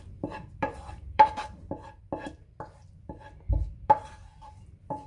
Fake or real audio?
fake